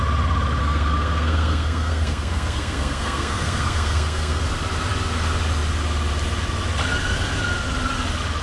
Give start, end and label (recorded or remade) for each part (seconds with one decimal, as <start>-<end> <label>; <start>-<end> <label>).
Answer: 0.0-0.6 recorded; 0.6-4.4 remade; 4.4-8.4 recorded